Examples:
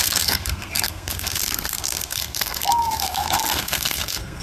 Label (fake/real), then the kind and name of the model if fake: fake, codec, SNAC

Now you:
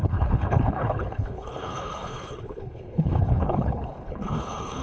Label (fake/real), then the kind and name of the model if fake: fake, codec, HILCodec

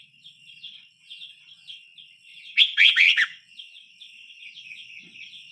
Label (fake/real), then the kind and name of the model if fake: fake, vocoder, WaveNeXt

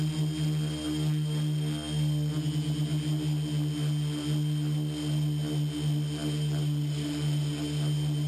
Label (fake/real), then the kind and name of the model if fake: real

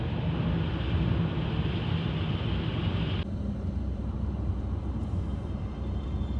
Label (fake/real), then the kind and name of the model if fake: real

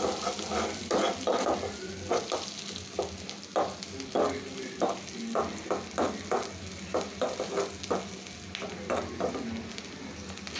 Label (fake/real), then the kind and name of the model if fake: real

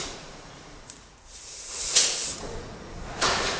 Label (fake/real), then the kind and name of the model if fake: fake, vocoder, Vocos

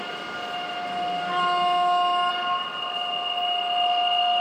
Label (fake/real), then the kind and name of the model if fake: real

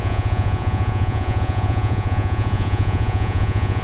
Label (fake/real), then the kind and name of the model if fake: fake, vocoder, Vocos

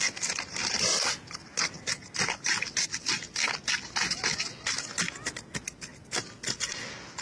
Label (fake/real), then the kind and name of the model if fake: real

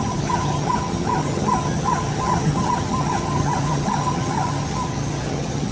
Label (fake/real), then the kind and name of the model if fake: fake, vocoder, HiFi-GAN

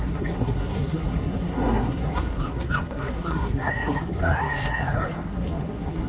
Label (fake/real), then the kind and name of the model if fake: fake, codec, SNAC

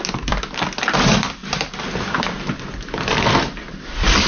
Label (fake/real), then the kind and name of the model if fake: real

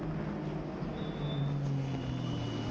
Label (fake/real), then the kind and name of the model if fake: real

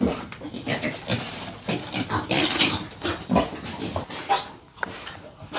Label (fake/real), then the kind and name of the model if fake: real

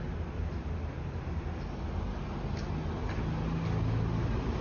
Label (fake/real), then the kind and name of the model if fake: real